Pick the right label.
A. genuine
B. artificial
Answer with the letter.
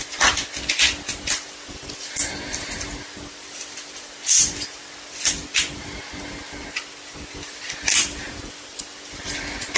A